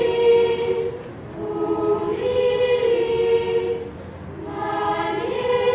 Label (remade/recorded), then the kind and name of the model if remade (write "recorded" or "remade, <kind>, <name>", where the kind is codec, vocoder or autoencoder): recorded